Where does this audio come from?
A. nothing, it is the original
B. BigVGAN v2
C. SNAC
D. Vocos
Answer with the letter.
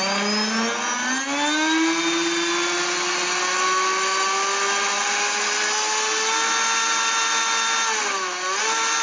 A